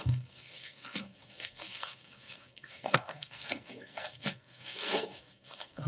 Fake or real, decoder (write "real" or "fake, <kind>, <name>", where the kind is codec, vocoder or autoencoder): fake, codec, SNAC